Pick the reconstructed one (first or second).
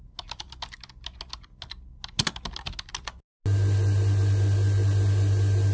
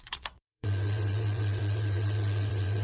second